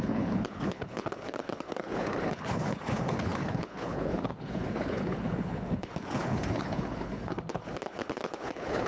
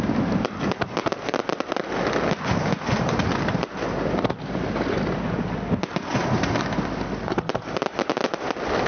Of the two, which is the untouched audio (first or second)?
second